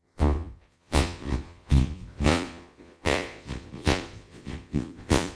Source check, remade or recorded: remade